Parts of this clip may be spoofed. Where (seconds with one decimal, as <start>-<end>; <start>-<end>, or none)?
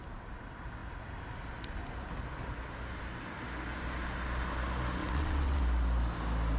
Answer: 5.0-5.6